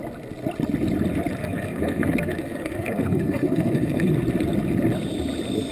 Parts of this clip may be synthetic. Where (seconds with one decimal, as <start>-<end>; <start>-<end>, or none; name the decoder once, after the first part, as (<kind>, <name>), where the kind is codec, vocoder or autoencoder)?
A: 1.4-4.1 (codec, SNAC)